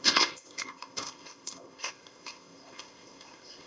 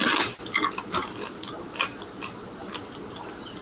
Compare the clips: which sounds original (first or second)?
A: second